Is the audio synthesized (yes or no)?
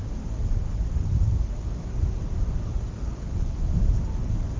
no